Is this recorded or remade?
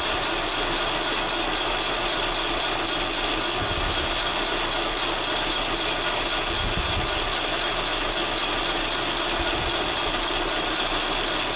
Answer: recorded